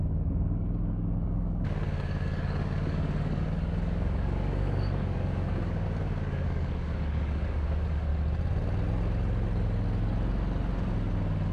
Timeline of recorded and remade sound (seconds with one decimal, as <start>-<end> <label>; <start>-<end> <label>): 0.0-8.1 remade; 8.1-11.5 recorded